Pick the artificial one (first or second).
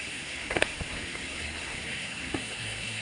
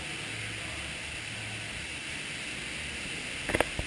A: first